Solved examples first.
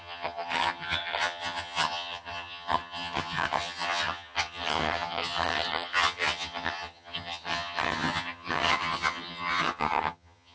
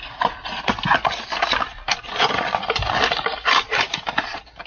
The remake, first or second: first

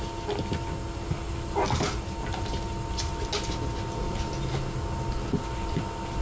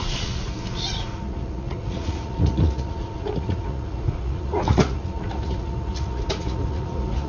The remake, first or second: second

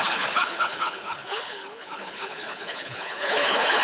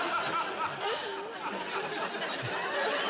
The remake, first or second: first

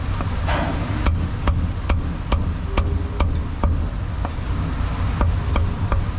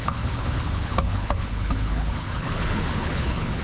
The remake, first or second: second